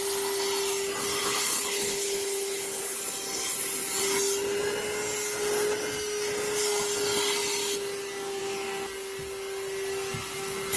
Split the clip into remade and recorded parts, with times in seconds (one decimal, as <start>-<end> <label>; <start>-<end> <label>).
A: 0.0-1.2 recorded; 1.2-3.0 remade; 3.0-10.8 recorded